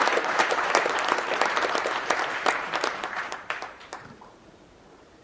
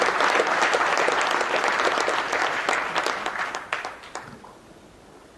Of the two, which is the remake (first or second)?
first